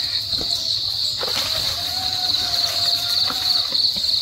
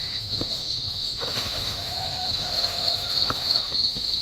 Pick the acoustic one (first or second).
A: first